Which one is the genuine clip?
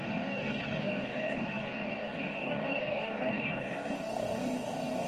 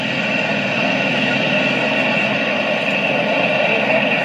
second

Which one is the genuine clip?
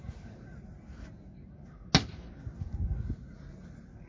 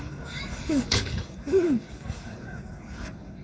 first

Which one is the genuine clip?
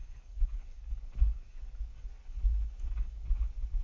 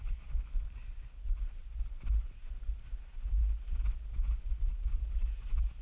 second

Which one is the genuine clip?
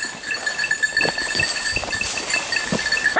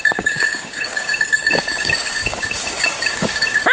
first